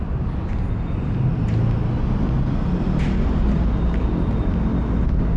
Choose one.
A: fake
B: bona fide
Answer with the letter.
B